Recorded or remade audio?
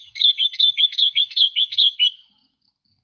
remade